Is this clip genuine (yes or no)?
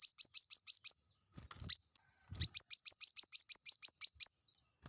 yes